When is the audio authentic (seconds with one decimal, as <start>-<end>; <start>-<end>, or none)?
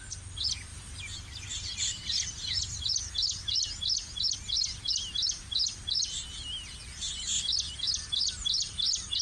0.0-9.2